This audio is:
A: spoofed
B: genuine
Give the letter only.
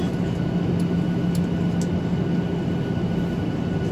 B